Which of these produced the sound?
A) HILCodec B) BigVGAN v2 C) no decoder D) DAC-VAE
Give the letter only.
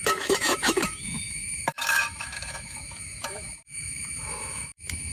D